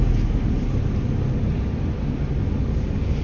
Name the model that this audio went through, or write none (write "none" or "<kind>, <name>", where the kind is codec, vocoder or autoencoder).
none